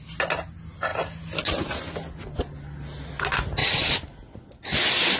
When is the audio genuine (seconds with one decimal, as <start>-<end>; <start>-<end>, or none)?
0.0-5.2